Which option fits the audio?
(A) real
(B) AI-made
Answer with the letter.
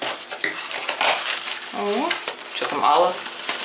A